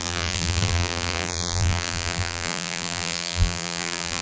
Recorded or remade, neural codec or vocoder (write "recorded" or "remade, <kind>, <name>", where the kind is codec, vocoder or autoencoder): remade, vocoder, BigVGAN v2